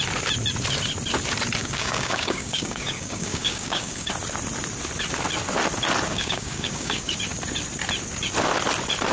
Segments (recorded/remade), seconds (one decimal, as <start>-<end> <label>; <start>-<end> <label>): 0.0-1.6 recorded; 1.6-4.1 remade; 4.1-6.1 recorded; 6.1-7.1 remade; 7.1-9.1 recorded